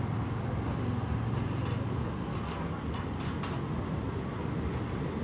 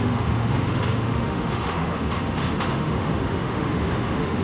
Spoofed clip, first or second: second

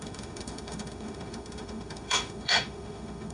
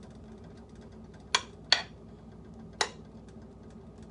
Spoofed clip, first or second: first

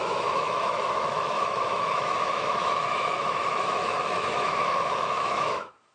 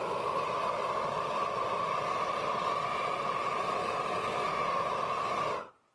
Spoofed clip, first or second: first